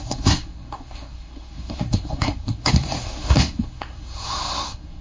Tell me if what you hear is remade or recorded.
remade